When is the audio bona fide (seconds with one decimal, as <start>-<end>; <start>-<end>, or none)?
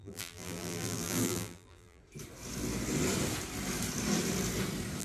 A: 2.0-5.0